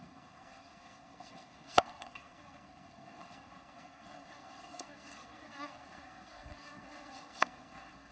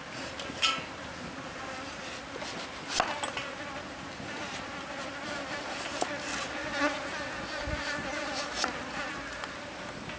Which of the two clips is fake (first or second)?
first